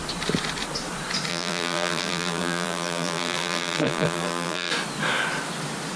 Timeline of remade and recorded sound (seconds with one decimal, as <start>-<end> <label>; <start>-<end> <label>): 0.0-1.3 recorded; 1.3-4.7 remade; 4.7-6.0 recorded